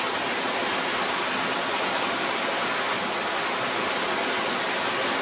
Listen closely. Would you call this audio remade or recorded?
recorded